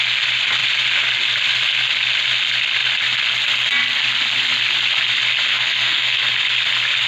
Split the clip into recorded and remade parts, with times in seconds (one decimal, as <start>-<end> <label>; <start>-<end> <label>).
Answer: 0.0-5.5 recorded; 5.5-6.2 remade; 6.2-7.1 recorded